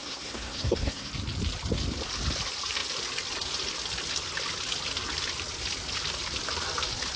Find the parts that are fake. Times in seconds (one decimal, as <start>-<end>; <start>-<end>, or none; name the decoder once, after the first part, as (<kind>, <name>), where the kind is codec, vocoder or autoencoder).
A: 0.0-1.1 (codec, SNAC)